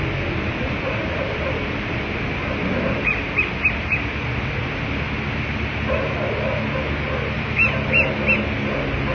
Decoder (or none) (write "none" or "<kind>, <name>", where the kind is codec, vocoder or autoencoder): none